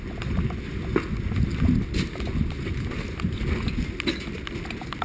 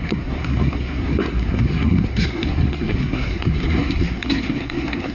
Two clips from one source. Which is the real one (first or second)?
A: first